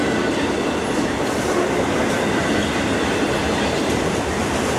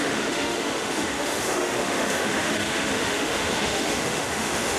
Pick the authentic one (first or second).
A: first